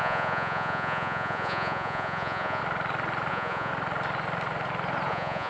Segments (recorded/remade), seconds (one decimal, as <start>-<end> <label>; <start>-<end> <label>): 0.0-2.6 remade; 2.6-3.3 recorded; 3.3-3.7 remade; 3.7-5.1 recorded; 5.1-5.5 remade